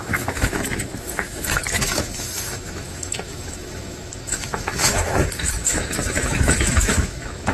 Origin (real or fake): fake